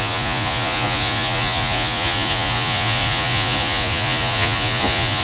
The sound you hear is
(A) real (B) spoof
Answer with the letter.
B